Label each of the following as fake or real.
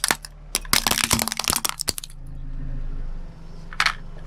real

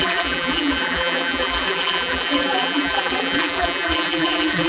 fake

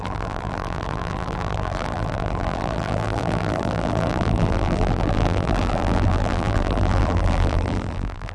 fake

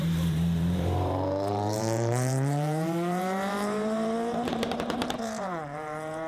fake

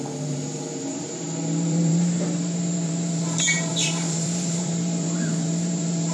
fake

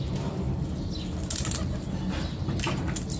real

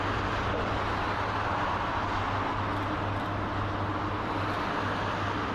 real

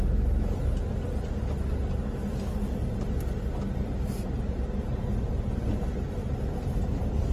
real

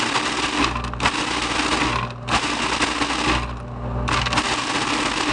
real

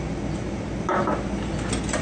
real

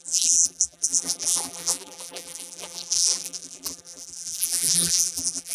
fake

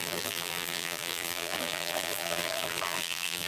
fake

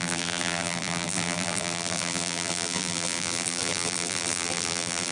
fake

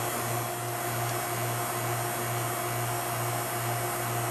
real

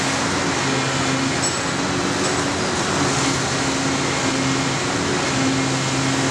real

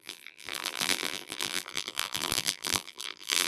fake